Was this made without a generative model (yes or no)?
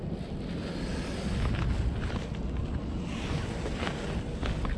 yes